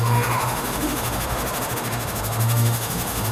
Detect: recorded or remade remade